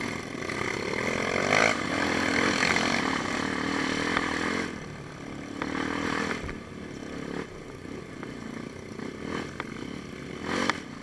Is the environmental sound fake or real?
real